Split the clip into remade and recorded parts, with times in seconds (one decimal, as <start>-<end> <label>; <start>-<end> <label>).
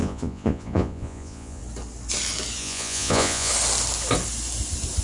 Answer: 0.0-1.6 remade; 1.6-2.6 recorded; 2.6-3.5 remade; 3.5-5.0 recorded